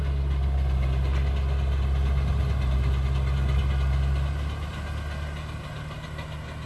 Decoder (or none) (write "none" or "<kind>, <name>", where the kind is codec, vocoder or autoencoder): none